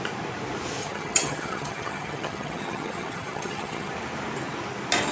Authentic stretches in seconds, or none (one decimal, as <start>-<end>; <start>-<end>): 0.0-0.8; 3.9-5.1